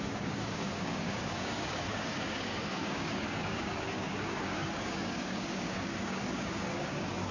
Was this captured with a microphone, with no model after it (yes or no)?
no